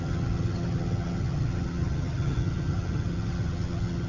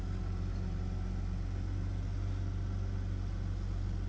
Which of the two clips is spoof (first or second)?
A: first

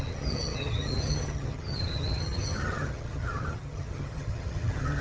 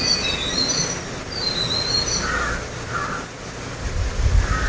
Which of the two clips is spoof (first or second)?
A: first